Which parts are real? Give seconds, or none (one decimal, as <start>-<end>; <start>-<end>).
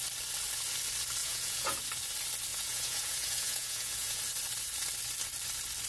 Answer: 0.0-1.2; 1.8-2.5; 4.2-5.9